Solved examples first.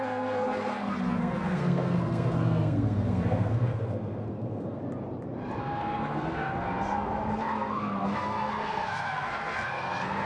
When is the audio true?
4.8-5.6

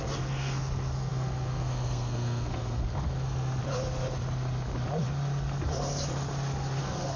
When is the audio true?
3.6-6.8

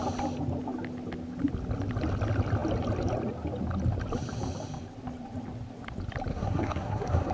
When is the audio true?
0.0-6.3

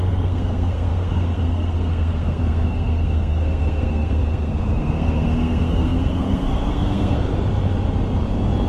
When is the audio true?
7.3-8.7

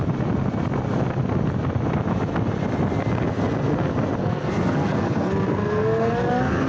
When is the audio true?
0.0-4.2

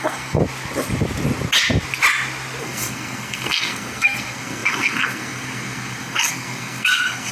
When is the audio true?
0.4-2.6